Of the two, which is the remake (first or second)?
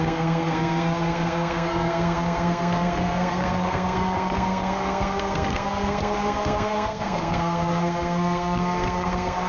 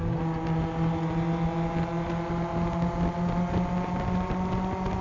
first